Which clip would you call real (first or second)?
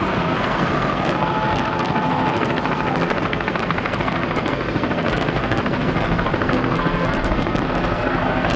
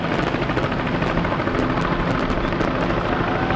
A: second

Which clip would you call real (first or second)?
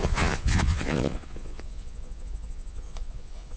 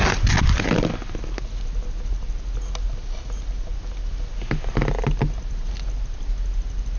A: second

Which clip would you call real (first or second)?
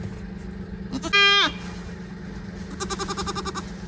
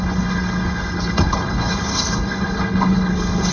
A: first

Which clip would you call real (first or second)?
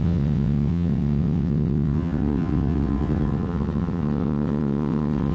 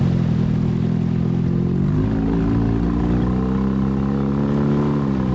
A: second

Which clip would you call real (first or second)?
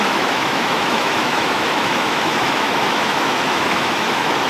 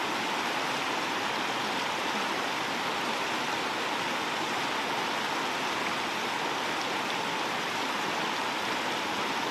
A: second